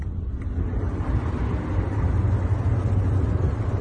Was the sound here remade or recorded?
recorded